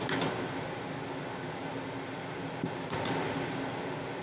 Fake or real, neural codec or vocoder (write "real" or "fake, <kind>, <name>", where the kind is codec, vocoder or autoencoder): real